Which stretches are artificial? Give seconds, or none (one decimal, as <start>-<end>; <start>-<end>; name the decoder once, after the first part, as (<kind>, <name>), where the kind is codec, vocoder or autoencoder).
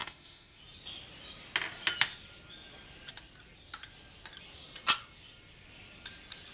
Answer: 0.0-0.6 (autoencoder, DAC-VAE)